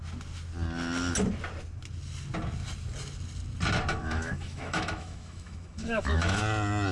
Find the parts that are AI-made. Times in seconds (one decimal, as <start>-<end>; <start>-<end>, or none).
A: 3.9-6.4